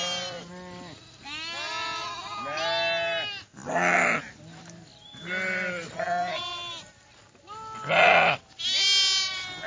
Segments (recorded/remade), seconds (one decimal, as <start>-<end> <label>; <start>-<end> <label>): 0.0-9.7 recorded